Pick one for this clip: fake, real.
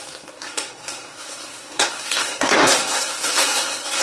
fake